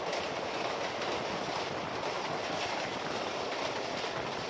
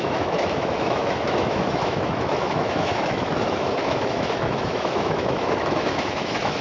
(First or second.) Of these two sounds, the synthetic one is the second